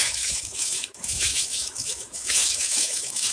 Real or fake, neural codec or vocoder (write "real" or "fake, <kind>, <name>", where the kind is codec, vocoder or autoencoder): fake, autoencoder, DAC-VAE